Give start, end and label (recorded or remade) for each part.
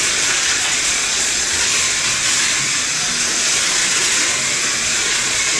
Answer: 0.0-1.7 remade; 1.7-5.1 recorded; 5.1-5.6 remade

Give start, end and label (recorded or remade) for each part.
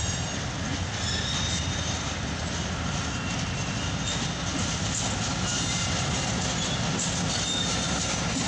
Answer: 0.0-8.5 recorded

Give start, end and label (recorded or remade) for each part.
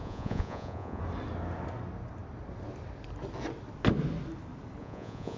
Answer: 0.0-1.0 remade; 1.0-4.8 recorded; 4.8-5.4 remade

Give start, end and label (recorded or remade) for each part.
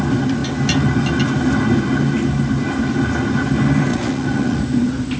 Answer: 0.0-3.9 recorded; 3.9-4.6 remade; 4.6-5.2 recorded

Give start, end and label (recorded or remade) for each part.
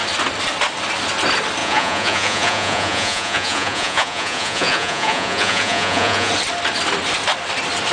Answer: 0.0-1.6 recorded; 1.6-6.3 remade; 6.3-7.9 recorded